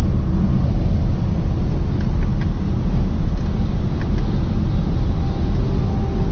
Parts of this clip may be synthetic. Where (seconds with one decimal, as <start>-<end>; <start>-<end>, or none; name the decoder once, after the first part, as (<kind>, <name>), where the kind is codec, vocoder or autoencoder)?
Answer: none